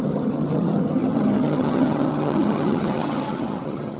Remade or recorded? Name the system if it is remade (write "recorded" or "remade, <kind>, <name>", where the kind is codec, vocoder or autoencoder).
remade, vocoder, HiFi-GAN